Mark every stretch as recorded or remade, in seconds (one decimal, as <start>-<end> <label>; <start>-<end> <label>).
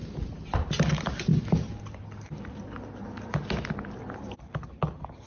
0.0-5.3 recorded